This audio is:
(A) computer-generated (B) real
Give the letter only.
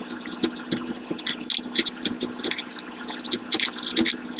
B